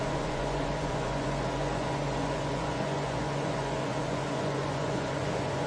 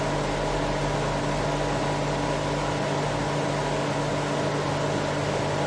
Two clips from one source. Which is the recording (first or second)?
second